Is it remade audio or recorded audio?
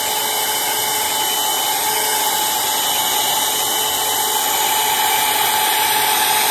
recorded